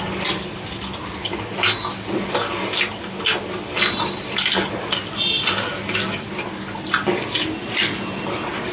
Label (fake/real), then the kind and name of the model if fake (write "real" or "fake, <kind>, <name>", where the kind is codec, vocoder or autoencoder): real